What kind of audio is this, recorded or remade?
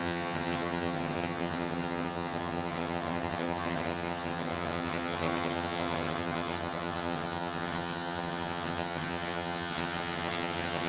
remade